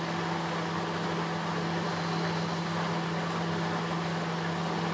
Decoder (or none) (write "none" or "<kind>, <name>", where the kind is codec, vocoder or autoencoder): none